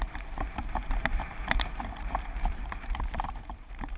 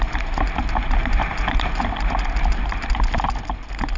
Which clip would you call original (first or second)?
second